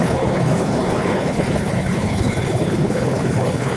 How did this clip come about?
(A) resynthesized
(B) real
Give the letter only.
A